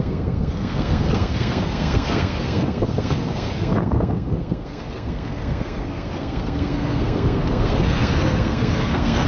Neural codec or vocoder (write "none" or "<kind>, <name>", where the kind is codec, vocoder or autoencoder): codec, SNAC